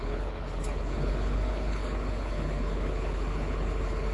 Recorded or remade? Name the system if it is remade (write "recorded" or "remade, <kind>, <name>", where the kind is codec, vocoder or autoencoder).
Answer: remade, codec, HILCodec